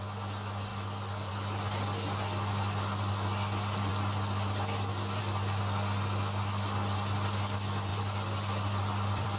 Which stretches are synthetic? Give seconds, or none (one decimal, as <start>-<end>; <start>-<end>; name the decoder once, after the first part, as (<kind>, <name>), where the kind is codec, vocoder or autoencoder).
7.9-9.4 (vocoder, BigVGAN v2)